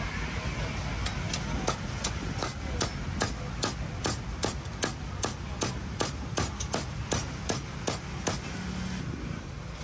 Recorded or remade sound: recorded